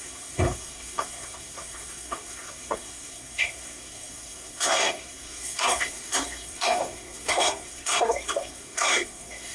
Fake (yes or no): yes